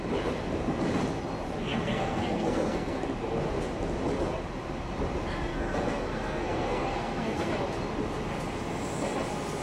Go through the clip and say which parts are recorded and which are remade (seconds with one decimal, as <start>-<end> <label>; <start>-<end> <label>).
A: 0.0-1.6 recorded; 1.6-3.0 remade; 3.0-5.5 recorded; 5.5-7.5 remade; 7.5-9.6 recorded